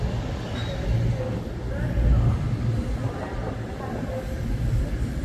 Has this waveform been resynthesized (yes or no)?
no